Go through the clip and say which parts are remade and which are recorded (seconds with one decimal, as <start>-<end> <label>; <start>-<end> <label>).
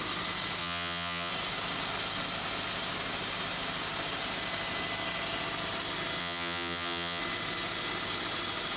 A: 0.0-0.6 recorded; 0.6-1.3 remade; 1.3-6.2 recorded; 6.2-7.2 remade; 7.2-8.8 recorded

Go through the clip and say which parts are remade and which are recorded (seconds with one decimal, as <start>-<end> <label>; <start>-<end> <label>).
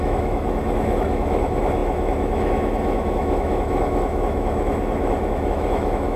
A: 0.0-6.2 remade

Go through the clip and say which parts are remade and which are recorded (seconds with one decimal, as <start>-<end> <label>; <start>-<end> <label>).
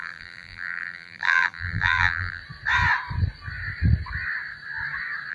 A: 0.0-2.4 remade; 2.4-5.3 recorded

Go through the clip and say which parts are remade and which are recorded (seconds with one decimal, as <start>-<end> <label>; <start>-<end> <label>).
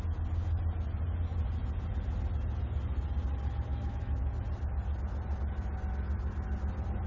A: 0.0-3.7 recorded; 3.7-4.3 remade; 4.3-7.1 recorded